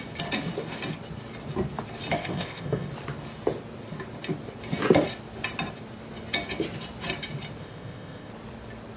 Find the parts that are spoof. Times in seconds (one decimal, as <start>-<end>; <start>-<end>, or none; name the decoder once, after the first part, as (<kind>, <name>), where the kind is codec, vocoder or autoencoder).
2.2-2.9 (codec, ZipCodec); 7.6-8.3